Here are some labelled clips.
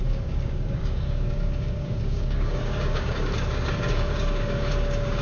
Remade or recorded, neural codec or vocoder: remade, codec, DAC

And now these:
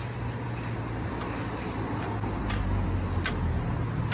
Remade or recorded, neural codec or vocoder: recorded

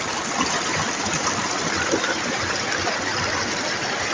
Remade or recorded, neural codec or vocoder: recorded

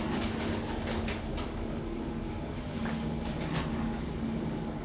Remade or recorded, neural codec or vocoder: remade, codec, DAC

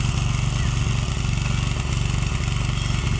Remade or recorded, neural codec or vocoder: recorded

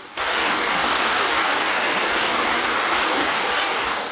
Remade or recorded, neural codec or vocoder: remade, codec, DAC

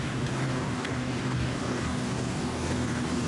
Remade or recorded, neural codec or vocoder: remade, codec, DAC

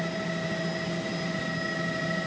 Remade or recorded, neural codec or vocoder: recorded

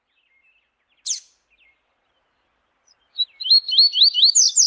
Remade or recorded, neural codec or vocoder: recorded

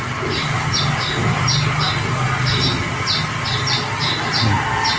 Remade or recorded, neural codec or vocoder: recorded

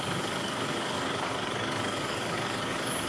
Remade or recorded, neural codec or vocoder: remade, codec, DAC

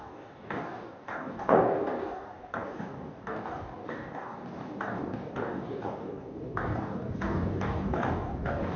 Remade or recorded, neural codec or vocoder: remade, codec, DAC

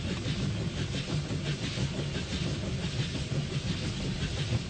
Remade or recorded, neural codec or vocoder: recorded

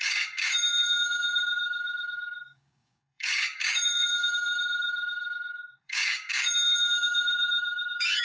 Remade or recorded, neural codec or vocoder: remade, codec, DAC